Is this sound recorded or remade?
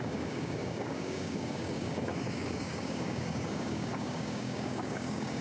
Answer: remade